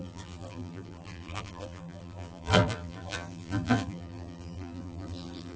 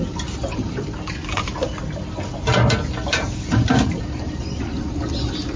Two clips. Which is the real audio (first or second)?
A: second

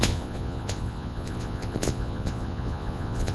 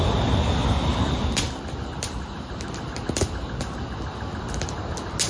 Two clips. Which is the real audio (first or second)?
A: second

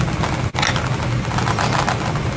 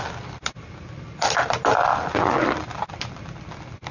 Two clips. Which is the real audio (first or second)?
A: first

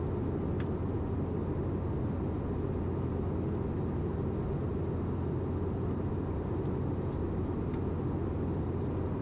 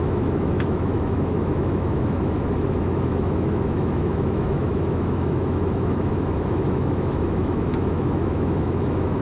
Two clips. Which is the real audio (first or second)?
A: first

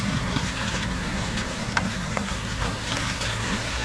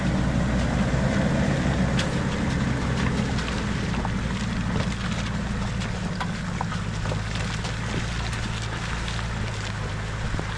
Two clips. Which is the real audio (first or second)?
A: second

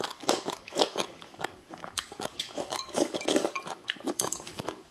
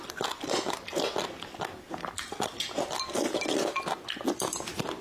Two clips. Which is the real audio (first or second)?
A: second